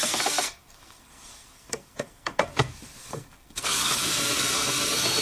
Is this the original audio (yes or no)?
no